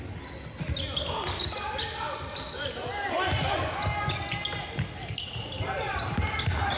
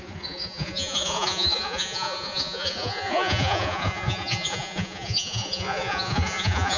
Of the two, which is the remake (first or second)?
second